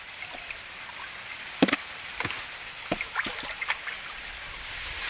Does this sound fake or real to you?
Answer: real